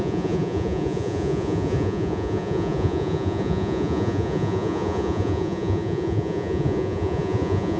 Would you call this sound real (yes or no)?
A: no